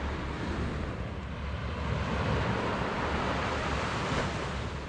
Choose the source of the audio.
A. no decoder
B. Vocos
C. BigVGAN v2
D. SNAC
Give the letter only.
A